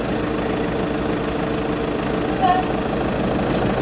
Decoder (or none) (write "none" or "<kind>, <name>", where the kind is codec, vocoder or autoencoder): none